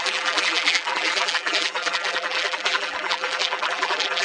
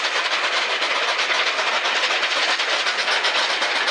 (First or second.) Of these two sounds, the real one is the second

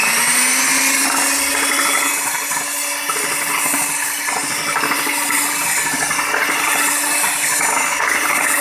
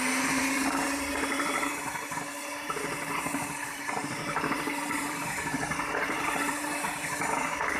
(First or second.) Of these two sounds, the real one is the first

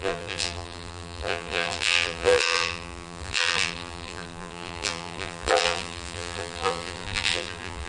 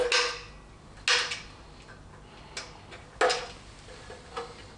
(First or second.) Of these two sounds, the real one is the second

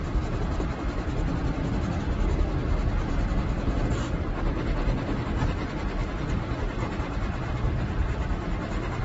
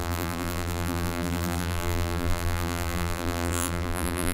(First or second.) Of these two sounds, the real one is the first